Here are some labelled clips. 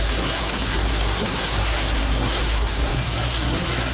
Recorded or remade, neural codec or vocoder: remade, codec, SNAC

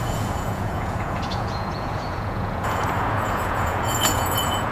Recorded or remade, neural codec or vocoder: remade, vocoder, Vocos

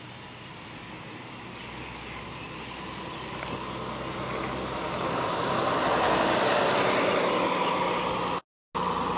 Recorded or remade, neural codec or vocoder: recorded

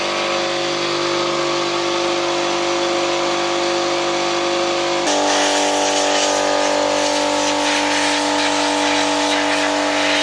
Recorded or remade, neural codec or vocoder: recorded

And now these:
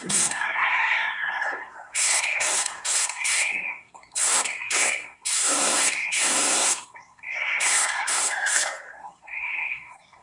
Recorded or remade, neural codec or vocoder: remade, codec, SNAC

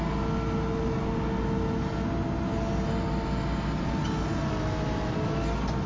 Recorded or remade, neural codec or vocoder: recorded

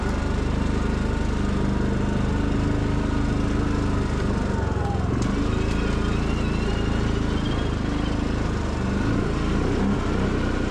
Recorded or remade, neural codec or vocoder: recorded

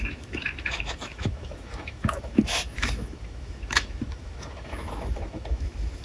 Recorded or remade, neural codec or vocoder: remade, autoencoder, DAC-VAE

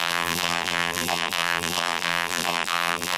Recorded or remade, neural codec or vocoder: remade, vocoder, BigVGAN v2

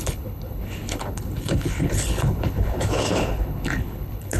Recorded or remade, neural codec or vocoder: remade, codec, HILCodec